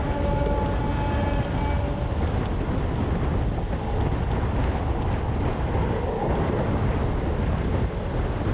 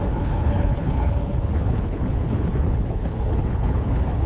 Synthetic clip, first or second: second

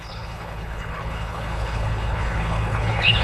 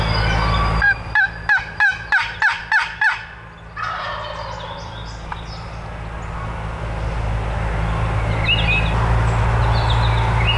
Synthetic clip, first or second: first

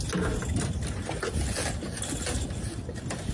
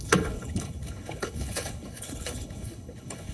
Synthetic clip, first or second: second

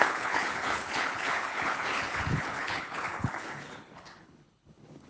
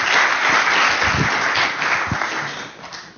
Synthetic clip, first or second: first